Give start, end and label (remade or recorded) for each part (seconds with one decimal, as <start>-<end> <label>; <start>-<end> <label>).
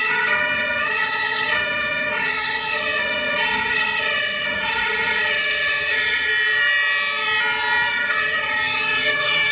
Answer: 0.0-6.3 remade; 6.3-7.9 recorded; 7.9-9.5 remade